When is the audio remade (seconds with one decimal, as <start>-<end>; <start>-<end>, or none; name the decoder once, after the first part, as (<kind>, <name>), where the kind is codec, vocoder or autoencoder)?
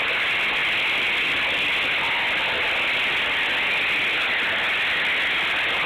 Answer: none